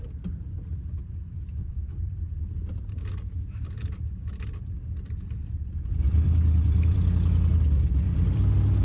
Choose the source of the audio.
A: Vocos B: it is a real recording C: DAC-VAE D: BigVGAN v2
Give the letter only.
D